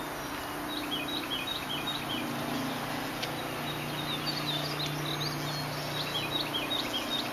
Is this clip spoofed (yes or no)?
no